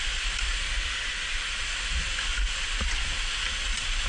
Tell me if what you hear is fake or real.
real